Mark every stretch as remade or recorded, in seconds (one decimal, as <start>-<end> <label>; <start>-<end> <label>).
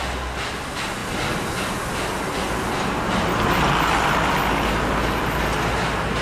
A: 0.0-6.2 recorded